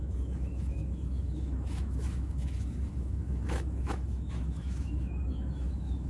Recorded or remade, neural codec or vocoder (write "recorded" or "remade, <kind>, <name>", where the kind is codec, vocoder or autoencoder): remade, autoencoder, DAC-VAE